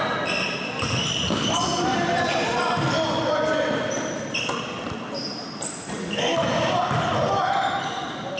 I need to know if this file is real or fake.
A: real